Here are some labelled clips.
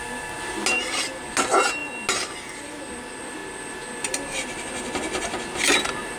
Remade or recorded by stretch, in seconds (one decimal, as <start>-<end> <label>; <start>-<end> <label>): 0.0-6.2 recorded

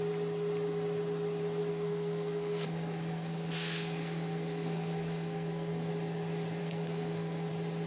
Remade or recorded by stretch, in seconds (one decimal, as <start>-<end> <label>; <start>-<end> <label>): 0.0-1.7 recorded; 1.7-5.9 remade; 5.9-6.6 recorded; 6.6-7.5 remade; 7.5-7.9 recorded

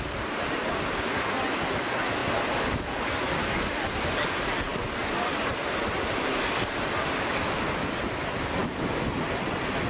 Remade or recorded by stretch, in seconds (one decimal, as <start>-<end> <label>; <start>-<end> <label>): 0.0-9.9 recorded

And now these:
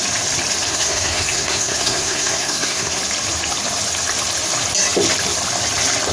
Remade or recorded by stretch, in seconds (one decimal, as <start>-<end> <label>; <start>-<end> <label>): 0.0-0.7 recorded; 0.7-3.0 remade; 3.0-6.1 recorded

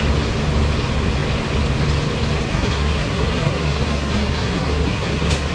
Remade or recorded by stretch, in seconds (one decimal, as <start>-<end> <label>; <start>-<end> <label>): 0.0-2.5 recorded; 2.5-5.5 remade

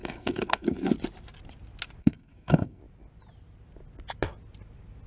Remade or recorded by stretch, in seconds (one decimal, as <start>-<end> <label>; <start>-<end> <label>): 0.0-0.9 remade; 0.9-2.0 recorded; 2.0-2.8 remade; 2.8-5.1 recorded

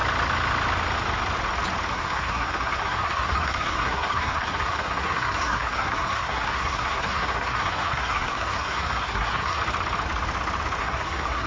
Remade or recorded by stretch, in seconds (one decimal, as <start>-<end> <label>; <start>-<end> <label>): 0.0-1.9 recorded; 1.9-9.6 remade; 9.6-10.8 recorded; 10.8-11.5 remade

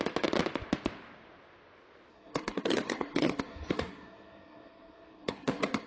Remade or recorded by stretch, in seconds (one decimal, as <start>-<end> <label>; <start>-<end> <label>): 0.0-2.1 recorded; 2.1-5.9 remade